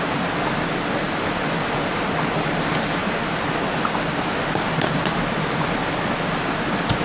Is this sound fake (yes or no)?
no